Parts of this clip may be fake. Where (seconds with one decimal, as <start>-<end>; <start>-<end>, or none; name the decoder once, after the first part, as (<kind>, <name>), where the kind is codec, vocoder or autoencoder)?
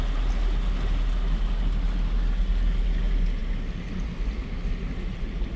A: none